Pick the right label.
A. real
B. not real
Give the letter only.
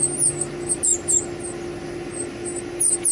A